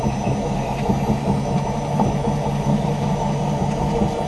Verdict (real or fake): real